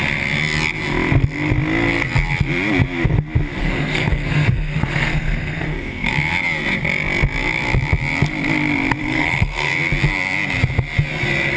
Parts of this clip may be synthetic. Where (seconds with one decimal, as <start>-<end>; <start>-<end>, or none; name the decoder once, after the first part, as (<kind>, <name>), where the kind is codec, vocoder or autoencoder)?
3.6-6.1 (codec, SNAC); 9.0-9.7